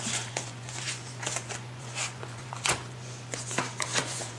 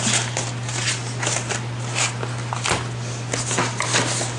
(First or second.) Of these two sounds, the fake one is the first